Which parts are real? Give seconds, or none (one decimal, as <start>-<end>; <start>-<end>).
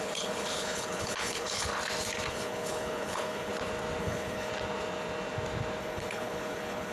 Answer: 1.7-2.3; 3.5-4.0; 4.5-5.8